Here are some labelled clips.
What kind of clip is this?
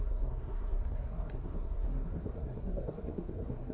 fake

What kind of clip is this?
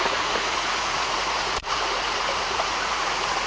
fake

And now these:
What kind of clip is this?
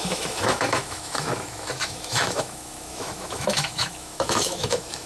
fake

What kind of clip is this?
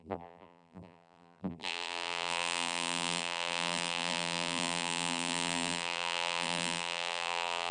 fake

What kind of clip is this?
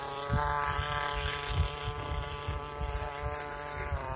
real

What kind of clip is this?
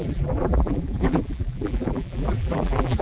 fake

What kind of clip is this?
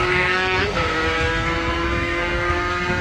fake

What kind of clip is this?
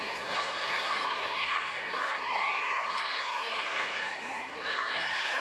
fake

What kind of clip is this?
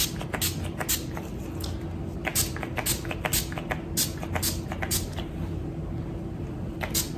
real